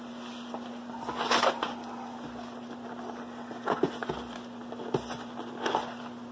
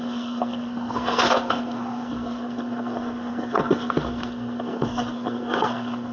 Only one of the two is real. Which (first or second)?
first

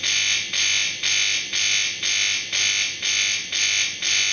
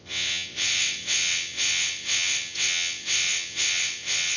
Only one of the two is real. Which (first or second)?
first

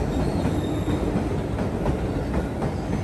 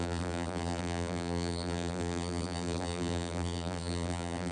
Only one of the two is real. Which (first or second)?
first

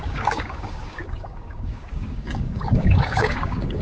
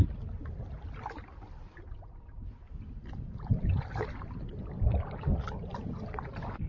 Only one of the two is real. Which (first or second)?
second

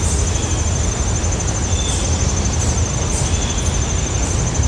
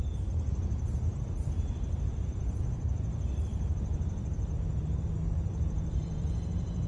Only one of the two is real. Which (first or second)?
first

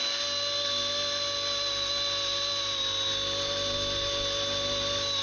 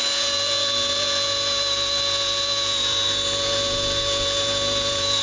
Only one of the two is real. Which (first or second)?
first